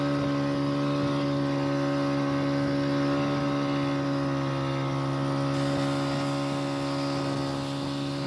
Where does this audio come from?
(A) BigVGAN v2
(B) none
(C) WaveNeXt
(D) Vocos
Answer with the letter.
B